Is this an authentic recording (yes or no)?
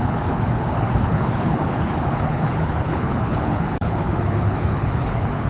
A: no